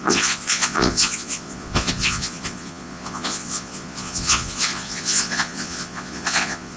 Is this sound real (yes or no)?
no